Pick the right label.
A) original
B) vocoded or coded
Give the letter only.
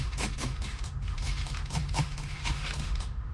B